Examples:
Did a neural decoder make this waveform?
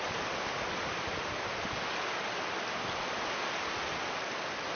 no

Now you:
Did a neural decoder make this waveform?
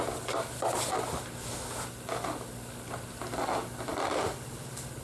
no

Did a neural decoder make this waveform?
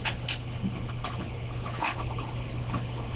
yes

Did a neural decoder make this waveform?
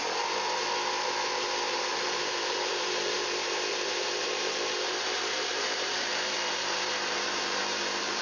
yes